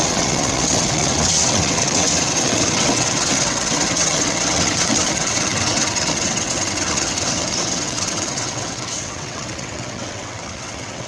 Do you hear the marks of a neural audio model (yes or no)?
yes